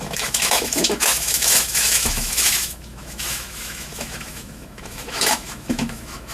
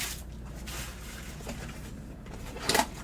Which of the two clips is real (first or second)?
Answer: second